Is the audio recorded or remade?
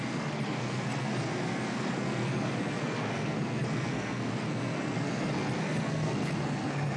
remade